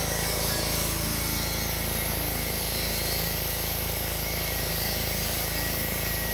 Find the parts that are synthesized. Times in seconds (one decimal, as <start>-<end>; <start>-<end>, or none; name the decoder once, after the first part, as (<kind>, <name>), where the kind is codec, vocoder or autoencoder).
0.0-1.1 (codec, DAC); 2.1-6.3